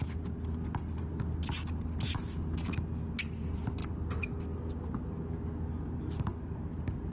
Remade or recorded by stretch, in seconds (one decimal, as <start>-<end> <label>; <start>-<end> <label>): 0.0-7.1 recorded